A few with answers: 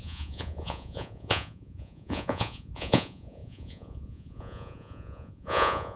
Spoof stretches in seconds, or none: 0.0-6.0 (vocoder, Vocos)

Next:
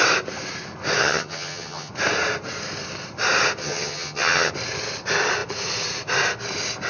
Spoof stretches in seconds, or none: 1.0-1.9 (vocoder, HiFi-GAN); 3.6-4.5

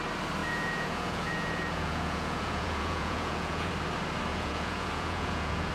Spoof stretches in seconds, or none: 0.4-3.7 (vocoder, Vocos); 4.3-5.7

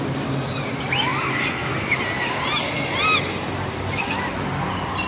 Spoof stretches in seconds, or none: none

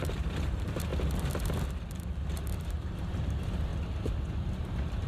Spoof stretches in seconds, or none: 0.0-0.9 (vocoder, BigVGAN v2); 2.5-3.7; 4.3-5.1